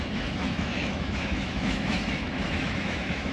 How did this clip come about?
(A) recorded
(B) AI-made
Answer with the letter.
B